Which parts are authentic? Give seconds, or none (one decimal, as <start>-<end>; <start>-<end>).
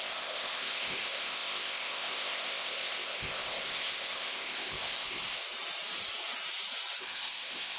5.4-7.0